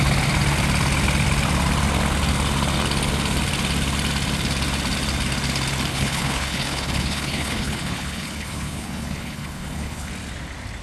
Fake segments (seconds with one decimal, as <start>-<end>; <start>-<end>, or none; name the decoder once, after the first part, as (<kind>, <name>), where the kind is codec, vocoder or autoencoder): 5.9-10.1 (codec, HILCodec)